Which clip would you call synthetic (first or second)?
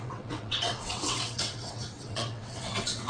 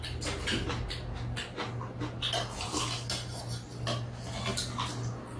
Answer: first